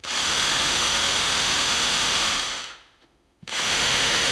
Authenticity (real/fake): fake